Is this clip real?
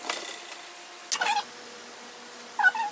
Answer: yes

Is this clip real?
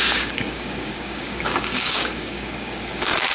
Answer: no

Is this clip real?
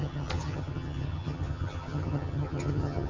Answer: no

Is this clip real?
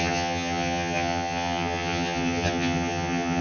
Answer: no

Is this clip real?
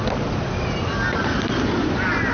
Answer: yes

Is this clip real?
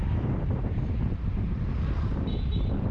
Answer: yes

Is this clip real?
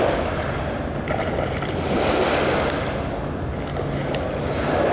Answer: yes